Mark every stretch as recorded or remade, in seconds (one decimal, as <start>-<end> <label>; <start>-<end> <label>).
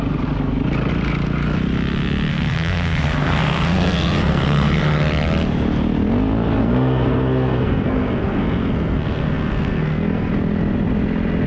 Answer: 0.0-2.3 recorded; 2.3-4.8 remade; 4.8-6.6 recorded; 6.6-10.3 remade; 10.3-11.5 recorded